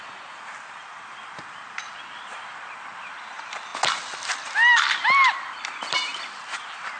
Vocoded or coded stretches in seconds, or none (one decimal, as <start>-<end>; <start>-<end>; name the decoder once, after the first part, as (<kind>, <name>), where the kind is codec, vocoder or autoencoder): none